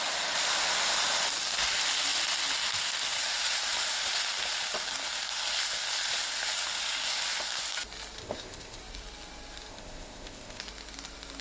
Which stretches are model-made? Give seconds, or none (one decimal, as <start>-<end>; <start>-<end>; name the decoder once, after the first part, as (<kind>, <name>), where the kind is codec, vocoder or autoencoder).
8.2-8.8 (codec, ZipCodec); 9.7-10.6